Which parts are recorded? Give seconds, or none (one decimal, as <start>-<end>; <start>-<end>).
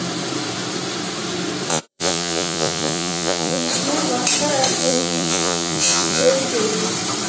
0.0-1.7; 3.7-4.8; 6.3-7.3